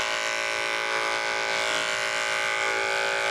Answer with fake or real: real